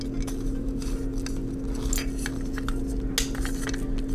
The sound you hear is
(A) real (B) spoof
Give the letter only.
A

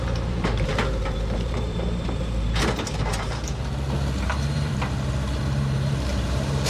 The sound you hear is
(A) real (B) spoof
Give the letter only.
B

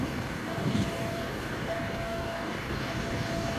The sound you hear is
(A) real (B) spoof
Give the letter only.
B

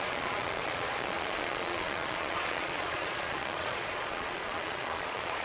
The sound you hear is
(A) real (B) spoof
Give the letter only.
B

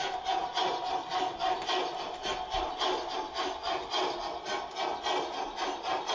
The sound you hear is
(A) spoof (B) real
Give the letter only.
B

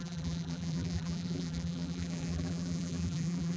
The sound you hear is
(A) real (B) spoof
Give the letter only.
B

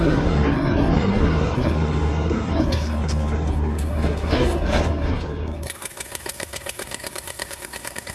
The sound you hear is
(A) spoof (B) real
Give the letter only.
A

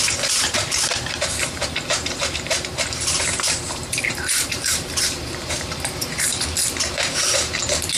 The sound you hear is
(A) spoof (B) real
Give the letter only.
A